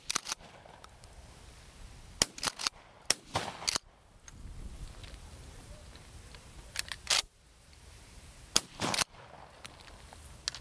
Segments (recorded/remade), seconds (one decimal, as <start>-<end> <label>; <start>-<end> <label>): 0.0-5.0 recorded; 5.0-8.9 remade; 8.9-10.6 recorded